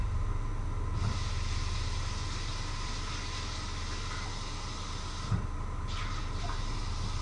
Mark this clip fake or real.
real